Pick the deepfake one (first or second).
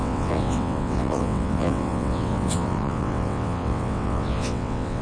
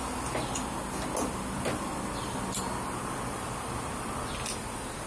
first